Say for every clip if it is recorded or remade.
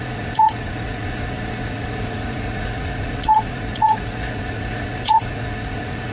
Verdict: remade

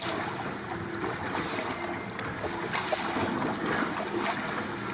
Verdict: recorded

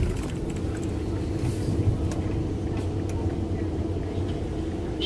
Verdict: recorded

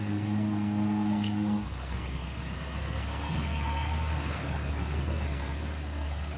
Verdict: remade